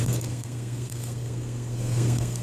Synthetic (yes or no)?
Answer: yes